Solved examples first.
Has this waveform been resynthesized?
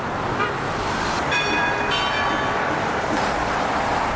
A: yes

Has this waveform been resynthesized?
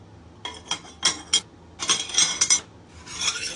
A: no